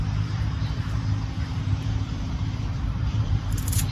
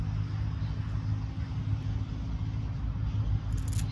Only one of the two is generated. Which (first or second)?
first